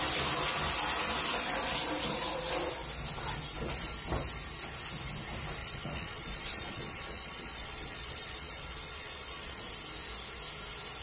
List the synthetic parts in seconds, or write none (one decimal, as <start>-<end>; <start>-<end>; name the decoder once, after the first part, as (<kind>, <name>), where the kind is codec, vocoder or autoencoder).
5.6-9.7 (vocoder, Vocos)